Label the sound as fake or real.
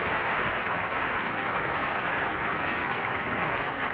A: fake